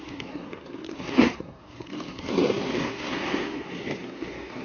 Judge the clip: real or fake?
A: fake